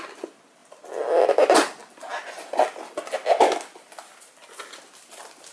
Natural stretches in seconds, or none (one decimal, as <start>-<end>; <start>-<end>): 0.0-5.5